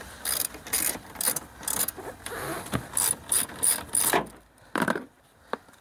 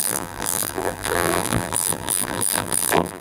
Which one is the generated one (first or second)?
second